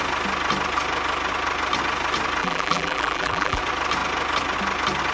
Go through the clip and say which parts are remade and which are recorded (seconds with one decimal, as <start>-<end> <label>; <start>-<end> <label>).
0.0-2.4 recorded; 2.4-3.6 remade; 3.6-5.1 recorded